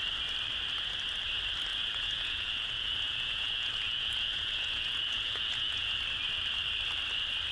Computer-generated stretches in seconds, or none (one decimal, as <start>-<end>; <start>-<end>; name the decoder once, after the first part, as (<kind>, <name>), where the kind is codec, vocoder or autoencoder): 1.7-5.9 (vocoder, Vocos)